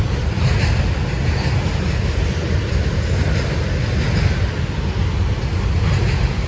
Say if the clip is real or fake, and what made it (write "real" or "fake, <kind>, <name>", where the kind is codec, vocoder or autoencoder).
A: real